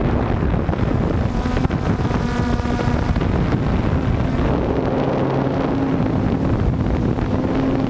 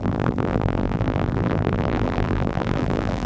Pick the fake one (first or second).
second